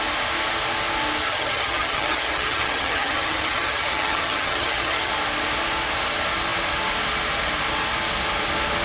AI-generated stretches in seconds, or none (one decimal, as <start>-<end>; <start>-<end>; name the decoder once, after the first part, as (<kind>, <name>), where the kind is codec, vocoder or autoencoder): 1.2-5.1 (vocoder, HiFi-GAN)